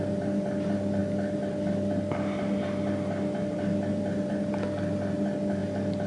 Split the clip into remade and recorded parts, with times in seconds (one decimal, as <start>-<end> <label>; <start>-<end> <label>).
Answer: 0.0-6.1 recorded